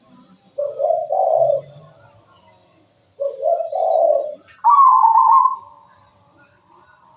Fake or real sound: real